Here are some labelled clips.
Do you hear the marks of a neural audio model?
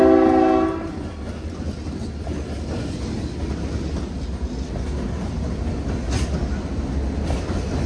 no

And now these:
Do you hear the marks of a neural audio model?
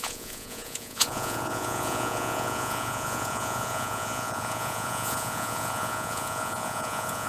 yes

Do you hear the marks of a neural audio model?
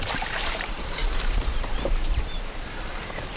yes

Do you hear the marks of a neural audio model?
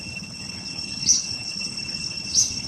yes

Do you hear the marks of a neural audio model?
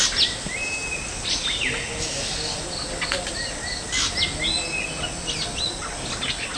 no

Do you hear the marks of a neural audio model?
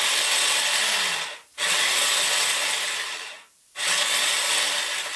no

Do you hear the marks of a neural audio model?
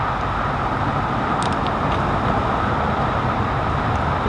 no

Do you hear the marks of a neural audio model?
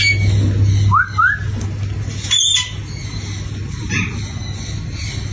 no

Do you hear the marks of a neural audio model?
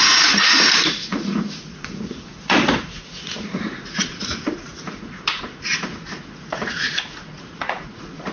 yes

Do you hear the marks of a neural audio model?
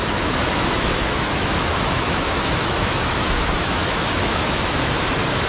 yes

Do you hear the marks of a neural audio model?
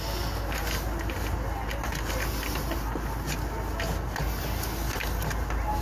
no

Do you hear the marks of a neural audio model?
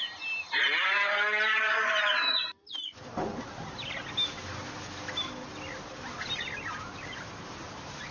no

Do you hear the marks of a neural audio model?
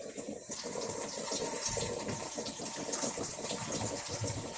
no